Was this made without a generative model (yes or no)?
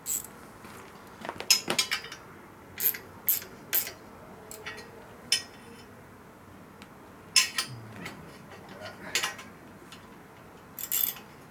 yes